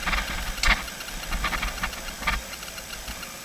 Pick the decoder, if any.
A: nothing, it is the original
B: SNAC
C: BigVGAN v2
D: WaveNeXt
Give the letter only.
A